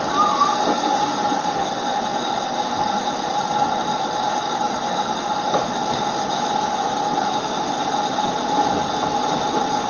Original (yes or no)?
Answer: yes